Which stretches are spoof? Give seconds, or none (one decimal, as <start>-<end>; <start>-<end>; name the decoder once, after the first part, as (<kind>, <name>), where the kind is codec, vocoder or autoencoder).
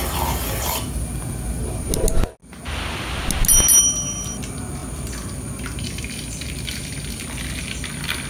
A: none